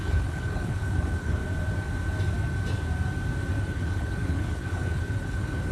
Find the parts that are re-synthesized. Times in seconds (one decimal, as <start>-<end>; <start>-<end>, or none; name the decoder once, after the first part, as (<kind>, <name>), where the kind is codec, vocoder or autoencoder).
0.0-1.4 (codec, HILCodec); 3.6-5.7